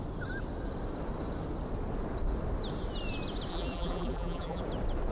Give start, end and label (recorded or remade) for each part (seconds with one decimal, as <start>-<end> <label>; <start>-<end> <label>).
0.0-3.5 recorded; 3.5-4.6 remade; 4.6-5.1 recorded